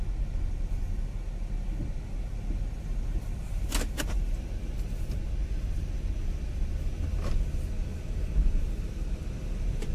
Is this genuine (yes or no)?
yes